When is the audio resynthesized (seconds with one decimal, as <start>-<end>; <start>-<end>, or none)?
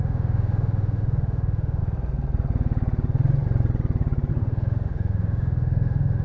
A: 0.0-1.8; 4.3-6.2